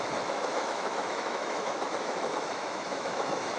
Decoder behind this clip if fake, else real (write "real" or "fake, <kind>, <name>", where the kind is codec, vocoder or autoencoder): fake, autoencoder, DAC-VAE